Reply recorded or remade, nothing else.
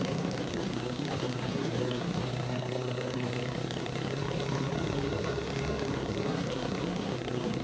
remade